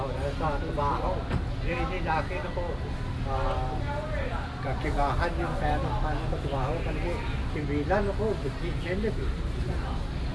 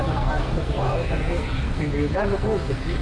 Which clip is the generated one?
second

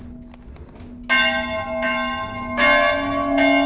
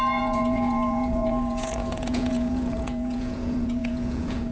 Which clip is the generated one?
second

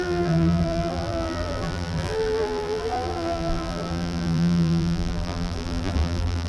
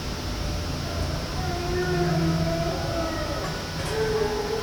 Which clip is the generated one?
first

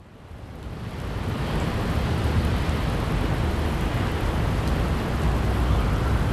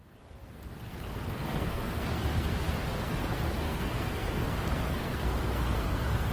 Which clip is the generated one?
second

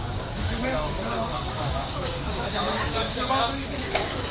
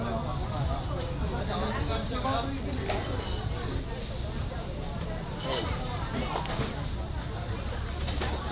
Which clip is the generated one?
first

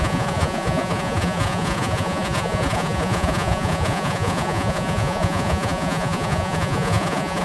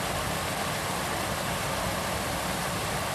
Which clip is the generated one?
first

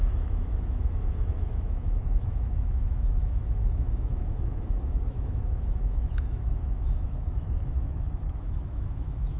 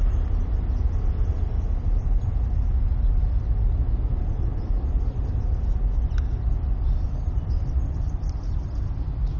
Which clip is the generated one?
first